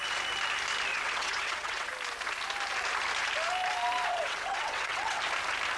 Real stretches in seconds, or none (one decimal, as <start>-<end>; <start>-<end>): 0.0-0.9; 1.9-4.1; 5.2-5.8

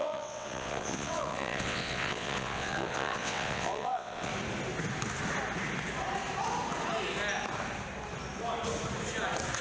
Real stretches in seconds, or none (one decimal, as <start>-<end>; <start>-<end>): 4.3-9.6